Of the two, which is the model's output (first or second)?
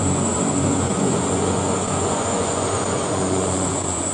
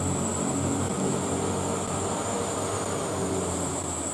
first